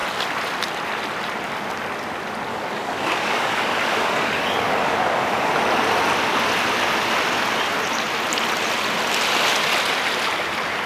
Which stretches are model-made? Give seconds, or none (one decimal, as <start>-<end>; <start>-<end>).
2.5-5.5